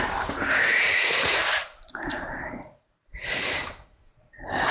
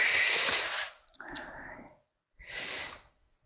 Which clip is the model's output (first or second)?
first